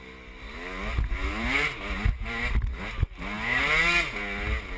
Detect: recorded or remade recorded